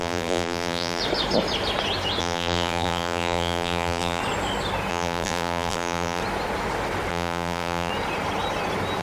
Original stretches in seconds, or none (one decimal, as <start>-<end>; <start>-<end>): 1.0-2.2; 4.2-4.9; 6.2-7.1; 7.9-9.0